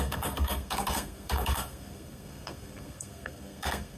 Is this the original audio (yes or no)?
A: no